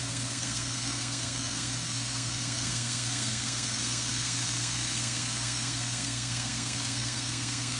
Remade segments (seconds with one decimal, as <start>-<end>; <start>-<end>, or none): 0.0-7.8